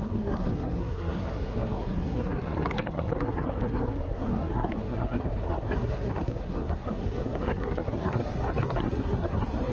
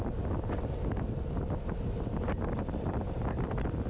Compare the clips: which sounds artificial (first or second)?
first